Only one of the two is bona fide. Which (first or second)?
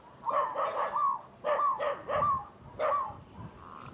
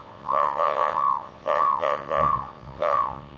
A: first